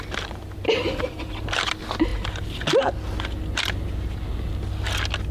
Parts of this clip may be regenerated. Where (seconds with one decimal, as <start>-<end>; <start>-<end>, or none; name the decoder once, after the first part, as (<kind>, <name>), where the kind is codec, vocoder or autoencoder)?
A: none